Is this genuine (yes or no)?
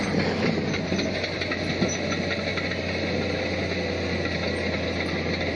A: yes